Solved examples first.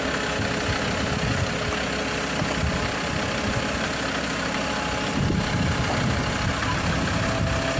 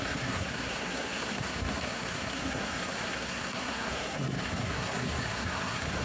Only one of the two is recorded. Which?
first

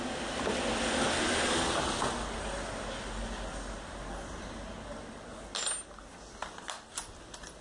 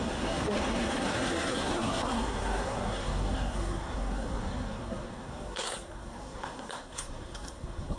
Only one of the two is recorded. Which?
first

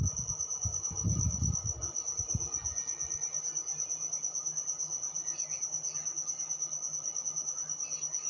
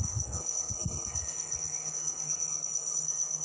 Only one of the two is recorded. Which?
first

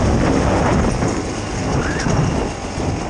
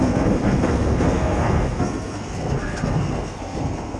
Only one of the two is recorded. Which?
first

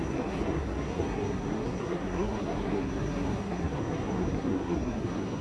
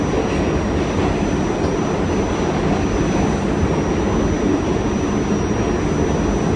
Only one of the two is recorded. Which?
second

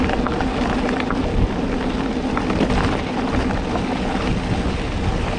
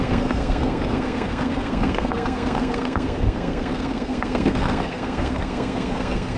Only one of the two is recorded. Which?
first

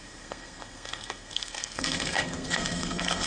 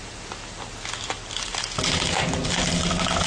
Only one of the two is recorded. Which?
second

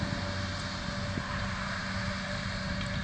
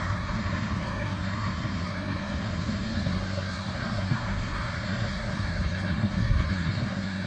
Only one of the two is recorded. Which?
first